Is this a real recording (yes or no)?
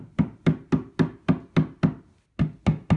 yes